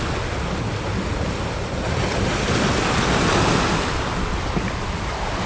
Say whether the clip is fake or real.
real